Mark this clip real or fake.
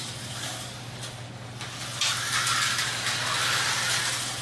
real